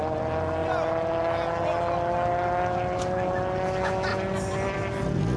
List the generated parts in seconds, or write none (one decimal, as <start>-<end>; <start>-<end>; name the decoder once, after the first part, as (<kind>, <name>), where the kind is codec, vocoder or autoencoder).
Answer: 4.1-5.0 (vocoder, BigVGAN v2)